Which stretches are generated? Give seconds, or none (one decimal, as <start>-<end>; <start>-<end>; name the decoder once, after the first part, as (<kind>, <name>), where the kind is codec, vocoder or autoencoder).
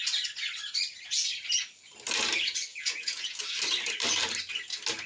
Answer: 2.7-3.4 (vocoder, Vocos)